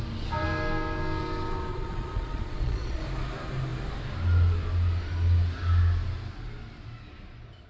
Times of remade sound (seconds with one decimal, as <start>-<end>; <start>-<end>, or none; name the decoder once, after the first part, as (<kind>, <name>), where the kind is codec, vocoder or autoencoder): 1.7-3.0 (vocoder, Vocos)